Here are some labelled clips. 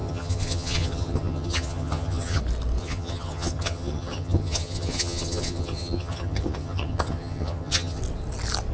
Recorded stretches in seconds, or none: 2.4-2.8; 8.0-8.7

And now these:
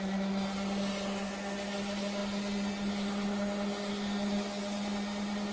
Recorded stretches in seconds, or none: 0.0-5.5

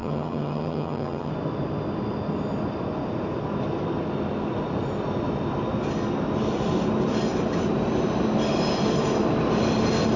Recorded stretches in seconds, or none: 1.3-10.2

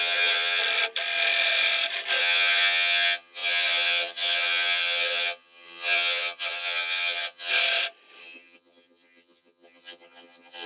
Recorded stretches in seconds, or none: 0.6-2.2; 7.5-8.2

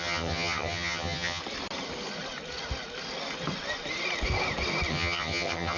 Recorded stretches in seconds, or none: 1.4-4.9